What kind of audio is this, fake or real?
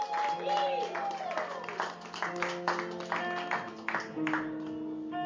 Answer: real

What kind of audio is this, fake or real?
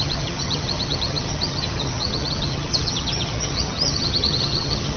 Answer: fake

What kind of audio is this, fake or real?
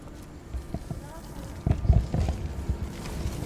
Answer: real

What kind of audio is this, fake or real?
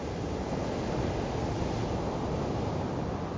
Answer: real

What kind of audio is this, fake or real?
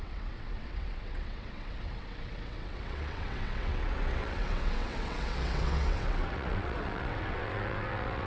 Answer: fake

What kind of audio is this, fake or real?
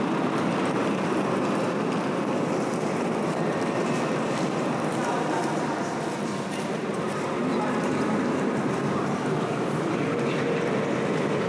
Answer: real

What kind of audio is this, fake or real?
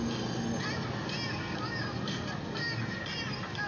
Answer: real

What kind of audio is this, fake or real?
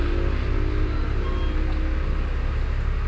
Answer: real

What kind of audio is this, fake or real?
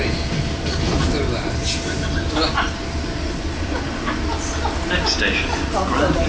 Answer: real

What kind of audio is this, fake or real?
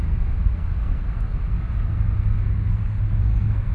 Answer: fake